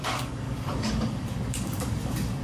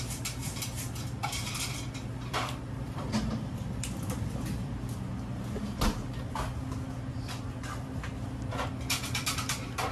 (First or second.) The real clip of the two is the second